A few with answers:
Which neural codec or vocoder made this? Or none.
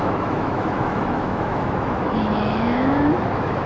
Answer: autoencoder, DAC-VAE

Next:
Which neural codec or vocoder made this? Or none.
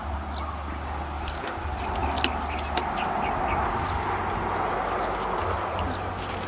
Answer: none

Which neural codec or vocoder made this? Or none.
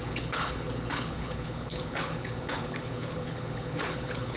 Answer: codec, HILCodec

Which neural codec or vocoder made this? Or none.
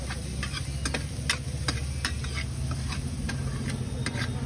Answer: none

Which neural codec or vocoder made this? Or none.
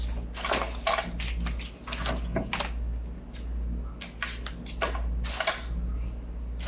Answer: none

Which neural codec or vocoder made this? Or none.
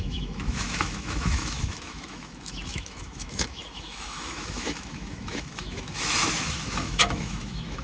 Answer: autoencoder, DAC-VAE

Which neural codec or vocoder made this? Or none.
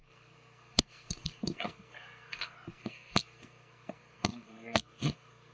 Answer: codec, SNAC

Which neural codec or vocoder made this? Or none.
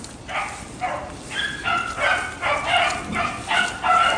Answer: none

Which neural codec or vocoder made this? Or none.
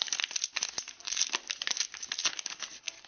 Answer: none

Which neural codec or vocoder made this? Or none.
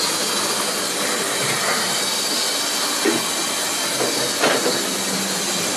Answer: none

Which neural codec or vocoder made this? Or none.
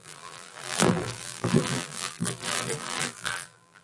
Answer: vocoder, BigVGAN v2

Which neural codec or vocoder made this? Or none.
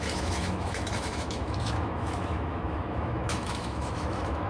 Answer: autoencoder, DAC-VAE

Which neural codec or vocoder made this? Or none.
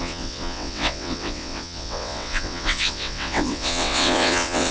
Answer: vocoder, WaveNeXt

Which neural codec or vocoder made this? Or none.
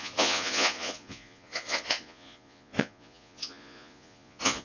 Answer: vocoder, Vocos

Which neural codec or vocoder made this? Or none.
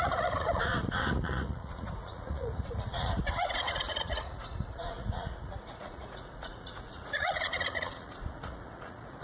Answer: vocoder, Vocos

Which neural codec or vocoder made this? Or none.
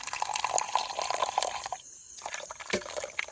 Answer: none